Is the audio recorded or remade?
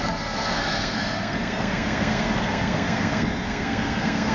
remade